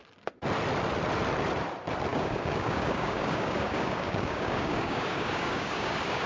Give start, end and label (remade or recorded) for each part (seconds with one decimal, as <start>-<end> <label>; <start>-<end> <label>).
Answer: 0.0-2.1 recorded; 2.1-6.3 remade